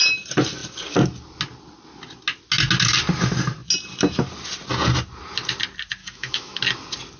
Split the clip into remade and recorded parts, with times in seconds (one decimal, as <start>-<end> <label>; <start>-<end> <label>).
0.0-6.0 recorded; 6.0-6.6 remade; 6.6-7.2 recorded